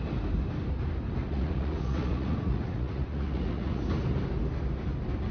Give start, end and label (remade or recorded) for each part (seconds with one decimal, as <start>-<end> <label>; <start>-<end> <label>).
0.0-1.2 recorded; 1.2-3.8 remade; 3.8-5.3 recorded

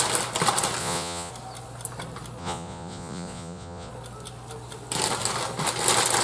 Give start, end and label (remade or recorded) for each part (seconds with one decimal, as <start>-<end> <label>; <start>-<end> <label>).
0.0-0.8 recorded; 0.8-1.3 remade; 1.3-2.4 recorded; 2.4-3.9 remade; 3.9-6.2 recorded

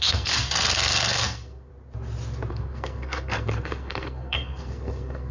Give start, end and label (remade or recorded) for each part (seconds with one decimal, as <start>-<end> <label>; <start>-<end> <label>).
0.0-1.7 remade; 1.7-2.5 recorded; 2.5-5.3 remade